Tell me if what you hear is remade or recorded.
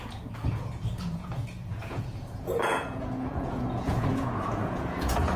remade